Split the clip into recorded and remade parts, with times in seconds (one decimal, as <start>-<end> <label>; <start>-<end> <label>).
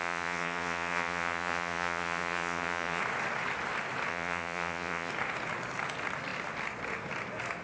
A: 0.0-3.0 remade; 3.0-4.1 recorded; 4.1-5.1 remade; 5.1-7.6 recorded